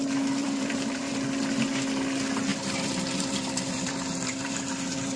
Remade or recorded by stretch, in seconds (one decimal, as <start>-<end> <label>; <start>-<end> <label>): 0.0-0.4 recorded; 0.4-1.1 remade; 1.1-2.5 recorded; 2.5-5.2 remade